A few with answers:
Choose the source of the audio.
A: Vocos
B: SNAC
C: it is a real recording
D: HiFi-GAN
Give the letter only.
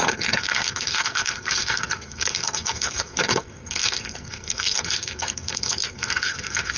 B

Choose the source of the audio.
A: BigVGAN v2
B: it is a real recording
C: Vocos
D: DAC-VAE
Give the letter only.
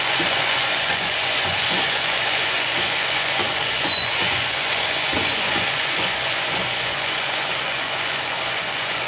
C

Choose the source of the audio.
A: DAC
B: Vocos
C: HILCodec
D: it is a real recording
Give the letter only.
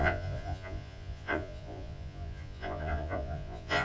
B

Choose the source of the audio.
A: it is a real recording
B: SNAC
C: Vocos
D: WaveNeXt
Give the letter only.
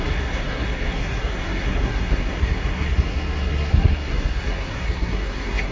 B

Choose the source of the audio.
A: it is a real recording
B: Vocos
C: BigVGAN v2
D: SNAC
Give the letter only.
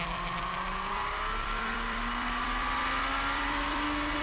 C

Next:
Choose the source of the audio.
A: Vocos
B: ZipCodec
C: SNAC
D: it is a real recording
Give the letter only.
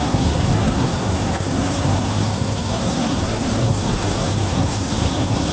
C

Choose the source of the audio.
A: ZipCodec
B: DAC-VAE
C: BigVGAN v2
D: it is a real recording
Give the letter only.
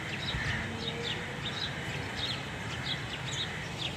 D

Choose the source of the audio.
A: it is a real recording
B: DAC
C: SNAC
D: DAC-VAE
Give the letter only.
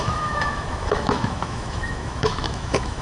D